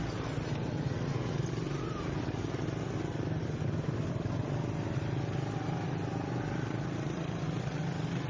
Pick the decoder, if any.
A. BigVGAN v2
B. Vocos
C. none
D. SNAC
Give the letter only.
C